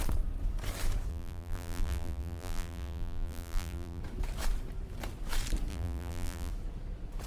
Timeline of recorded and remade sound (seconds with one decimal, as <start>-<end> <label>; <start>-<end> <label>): 0.0-1.1 recorded; 1.1-4.0 remade; 4.0-5.7 recorded; 5.7-6.5 remade; 6.5-7.3 recorded

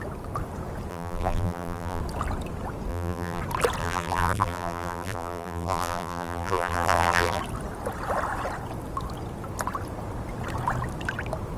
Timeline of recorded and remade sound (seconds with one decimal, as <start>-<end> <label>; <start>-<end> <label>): 0.0-0.9 recorded; 0.9-2.0 remade; 2.0-2.9 recorded; 2.9-3.4 remade; 3.4-3.8 recorded; 3.8-7.4 remade; 7.4-11.6 recorded

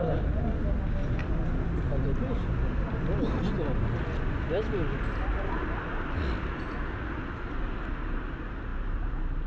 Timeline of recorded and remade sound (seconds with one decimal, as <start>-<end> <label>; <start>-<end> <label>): 0.0-9.5 recorded

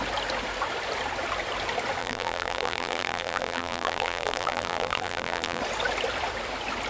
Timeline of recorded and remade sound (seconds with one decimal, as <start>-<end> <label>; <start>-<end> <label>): 0.0-2.0 recorded; 2.0-5.6 remade; 5.6-6.9 recorded

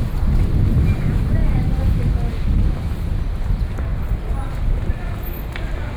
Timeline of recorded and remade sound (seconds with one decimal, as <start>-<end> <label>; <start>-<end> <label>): 0.0-1.4 recorded; 1.4-2.1 remade; 2.1-6.0 recorded

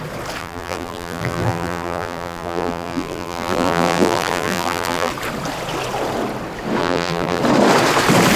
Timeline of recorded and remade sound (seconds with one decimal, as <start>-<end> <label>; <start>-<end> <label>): 0.0-0.4 recorded; 0.4-5.1 remade; 5.1-6.8 recorded; 6.8-7.4 remade; 7.4-8.4 recorded

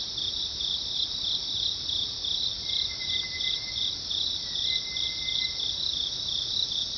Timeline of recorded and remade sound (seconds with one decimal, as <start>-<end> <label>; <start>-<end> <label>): 0.0-7.0 recorded